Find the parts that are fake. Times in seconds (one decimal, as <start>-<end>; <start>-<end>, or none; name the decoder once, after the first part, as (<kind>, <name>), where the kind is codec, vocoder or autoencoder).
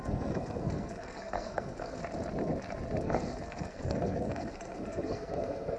0.0-2.0 (codec, SNAC); 3.0-5.8